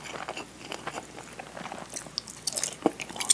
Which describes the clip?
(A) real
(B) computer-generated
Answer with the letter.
A